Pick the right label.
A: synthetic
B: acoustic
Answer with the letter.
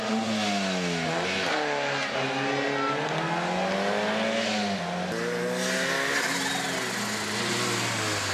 B